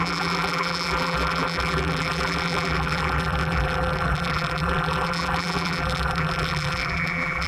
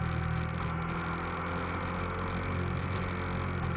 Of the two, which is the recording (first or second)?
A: second